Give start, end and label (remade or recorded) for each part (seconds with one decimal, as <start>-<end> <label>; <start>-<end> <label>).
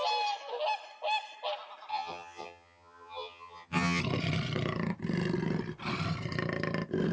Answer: 0.0-1.9 recorded; 1.9-4.0 remade; 4.0-7.1 recorded